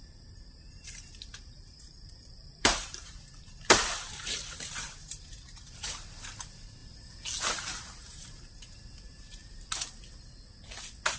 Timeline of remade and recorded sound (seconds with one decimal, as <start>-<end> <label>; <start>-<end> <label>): 0.0-6.8 remade; 6.8-7.5 recorded; 7.5-9.4 remade; 9.4-11.2 recorded

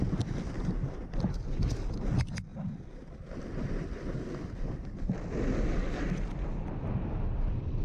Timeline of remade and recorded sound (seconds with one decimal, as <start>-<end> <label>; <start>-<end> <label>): 0.0-2.5 recorded; 2.5-4.1 remade; 4.1-7.8 recorded

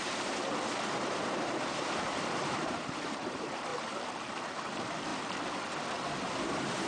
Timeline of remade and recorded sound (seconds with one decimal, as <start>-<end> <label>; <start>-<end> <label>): 0.0-3.7 remade; 3.7-4.3 recorded; 4.3-5.1 remade; 5.1-6.5 recorded; 6.5-6.9 remade

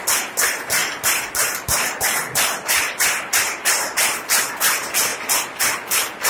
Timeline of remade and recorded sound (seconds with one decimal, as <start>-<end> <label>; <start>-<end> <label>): 0.0-0.8 recorded; 0.8-2.9 remade; 2.9-6.3 recorded